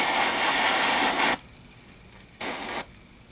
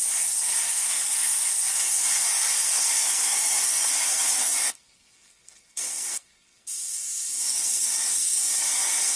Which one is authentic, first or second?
first